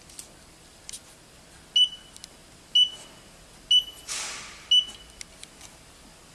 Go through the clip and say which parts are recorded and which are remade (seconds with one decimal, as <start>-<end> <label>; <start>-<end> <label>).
0.0-6.3 recorded